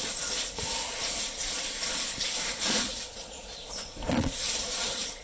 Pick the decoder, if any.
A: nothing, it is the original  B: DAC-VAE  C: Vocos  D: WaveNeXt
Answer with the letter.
C